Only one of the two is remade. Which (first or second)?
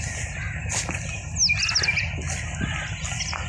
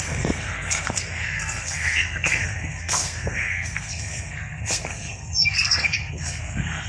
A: second